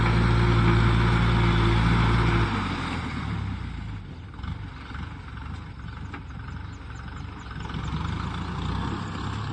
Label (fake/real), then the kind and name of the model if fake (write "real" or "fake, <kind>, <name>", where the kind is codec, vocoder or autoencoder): real